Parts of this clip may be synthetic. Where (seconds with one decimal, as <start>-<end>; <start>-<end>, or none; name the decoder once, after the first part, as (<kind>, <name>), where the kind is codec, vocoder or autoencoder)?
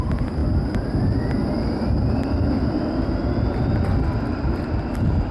none